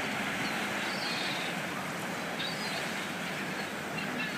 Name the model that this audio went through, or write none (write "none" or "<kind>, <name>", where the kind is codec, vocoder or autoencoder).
none